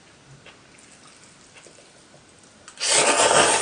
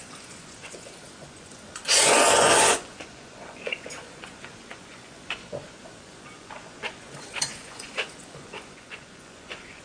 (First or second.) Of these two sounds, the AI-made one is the second